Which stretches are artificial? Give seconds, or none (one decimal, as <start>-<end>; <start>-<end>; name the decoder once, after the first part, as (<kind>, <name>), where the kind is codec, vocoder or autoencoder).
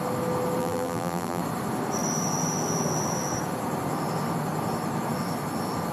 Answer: 0.6-1.4 (vocoder, BigVGAN v2)